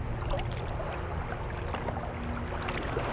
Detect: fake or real real